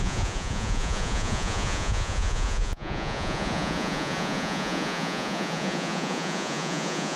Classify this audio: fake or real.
fake